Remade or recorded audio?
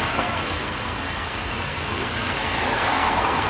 remade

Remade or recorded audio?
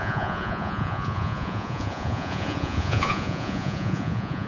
remade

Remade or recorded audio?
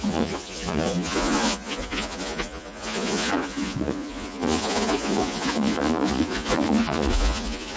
remade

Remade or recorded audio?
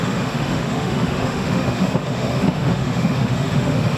remade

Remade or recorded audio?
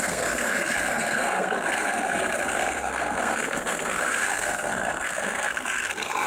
remade